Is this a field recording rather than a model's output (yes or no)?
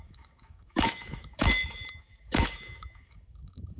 no